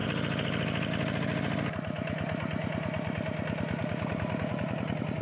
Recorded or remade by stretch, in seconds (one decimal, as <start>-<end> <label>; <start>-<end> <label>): 0.0-5.2 recorded